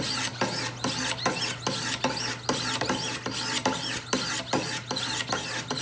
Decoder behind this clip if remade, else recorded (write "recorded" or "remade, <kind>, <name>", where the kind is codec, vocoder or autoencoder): recorded